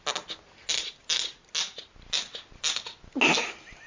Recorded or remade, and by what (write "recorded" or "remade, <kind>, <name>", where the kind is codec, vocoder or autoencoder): recorded